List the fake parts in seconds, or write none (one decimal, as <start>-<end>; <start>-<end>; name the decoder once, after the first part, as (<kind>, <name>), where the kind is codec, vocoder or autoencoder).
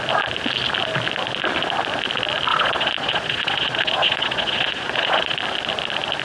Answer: 2.5-5.3 (vocoder, Vocos)